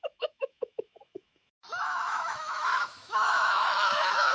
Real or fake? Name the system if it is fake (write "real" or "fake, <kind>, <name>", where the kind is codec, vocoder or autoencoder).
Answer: fake, autoencoder, DAC-VAE